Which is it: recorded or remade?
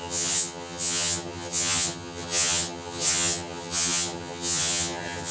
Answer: remade